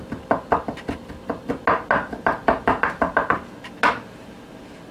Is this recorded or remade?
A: recorded